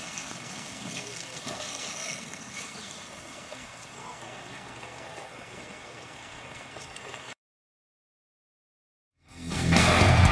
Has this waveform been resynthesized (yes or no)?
yes